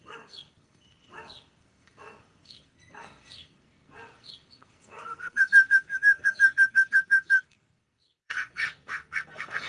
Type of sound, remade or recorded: remade